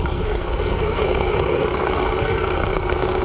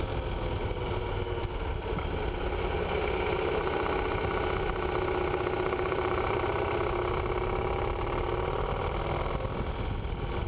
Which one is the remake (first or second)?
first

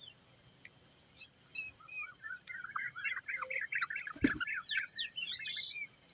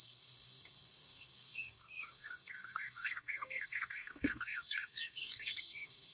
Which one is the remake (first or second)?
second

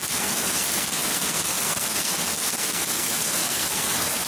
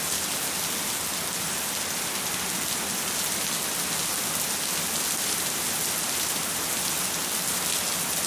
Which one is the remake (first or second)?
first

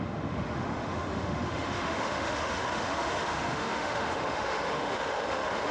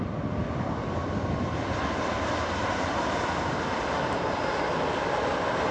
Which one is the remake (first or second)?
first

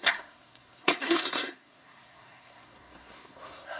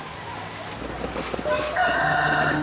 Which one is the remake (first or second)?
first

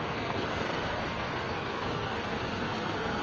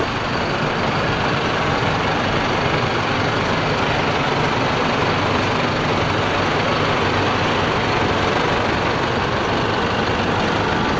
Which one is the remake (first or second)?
first